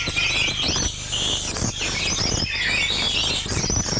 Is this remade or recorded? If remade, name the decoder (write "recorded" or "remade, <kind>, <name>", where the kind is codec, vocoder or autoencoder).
recorded